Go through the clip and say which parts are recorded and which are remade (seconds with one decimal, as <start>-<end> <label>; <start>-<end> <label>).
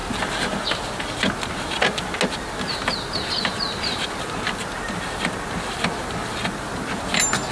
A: 0.0-7.5 recorded